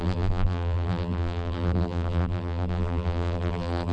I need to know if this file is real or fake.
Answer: fake